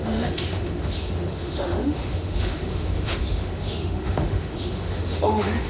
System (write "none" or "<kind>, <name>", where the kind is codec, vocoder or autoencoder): autoencoder, DAC-VAE